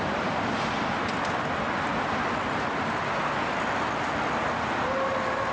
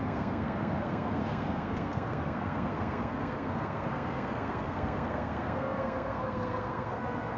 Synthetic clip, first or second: second